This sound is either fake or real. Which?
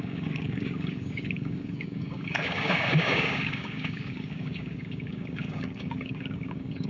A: fake